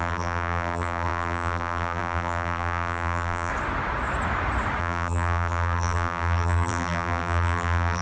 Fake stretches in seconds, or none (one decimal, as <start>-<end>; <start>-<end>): 0.0-3.5; 4.8-8.0